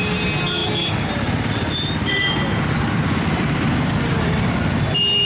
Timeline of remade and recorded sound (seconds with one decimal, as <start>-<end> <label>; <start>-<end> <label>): 0.0-5.2 recorded